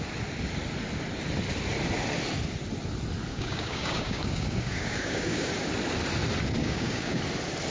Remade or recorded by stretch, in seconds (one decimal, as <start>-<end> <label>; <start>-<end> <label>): 0.0-3.3 recorded; 3.3-5.5 remade; 5.5-6.6 recorded; 6.6-7.2 remade; 7.2-7.7 recorded